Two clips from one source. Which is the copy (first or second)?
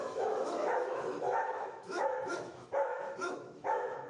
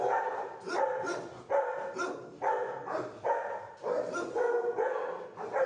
first